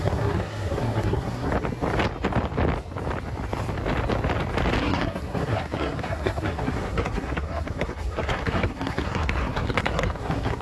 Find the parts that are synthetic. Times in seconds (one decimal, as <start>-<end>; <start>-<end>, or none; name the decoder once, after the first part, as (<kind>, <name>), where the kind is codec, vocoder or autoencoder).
0.0-1.5 (codec, SNAC); 4.8-10.6